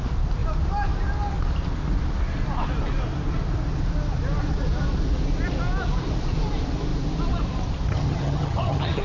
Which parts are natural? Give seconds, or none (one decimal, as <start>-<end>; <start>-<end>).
0.0-7.9